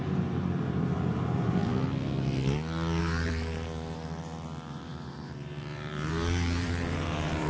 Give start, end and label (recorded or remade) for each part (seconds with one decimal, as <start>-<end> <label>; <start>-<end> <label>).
0.0-1.6 remade; 1.6-3.0 recorded; 3.0-7.5 remade